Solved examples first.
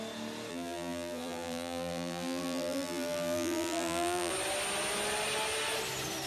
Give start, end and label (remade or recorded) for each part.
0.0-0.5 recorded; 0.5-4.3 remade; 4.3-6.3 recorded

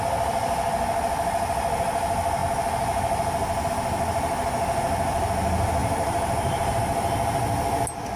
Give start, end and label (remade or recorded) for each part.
0.0-5.8 recorded; 5.8-6.8 remade; 6.8-8.2 recorded

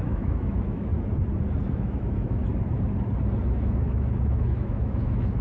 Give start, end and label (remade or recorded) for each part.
0.0-0.9 remade; 0.9-1.7 recorded; 1.7-2.4 remade; 2.4-3.5 recorded; 3.5-5.4 remade